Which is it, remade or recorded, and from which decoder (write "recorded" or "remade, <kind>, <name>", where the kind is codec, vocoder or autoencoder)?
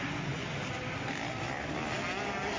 recorded